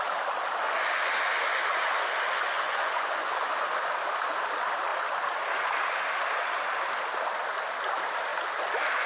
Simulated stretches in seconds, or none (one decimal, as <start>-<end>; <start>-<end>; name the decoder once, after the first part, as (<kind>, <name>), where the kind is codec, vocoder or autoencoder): 0.6-3.8 (vocoder, Vocos)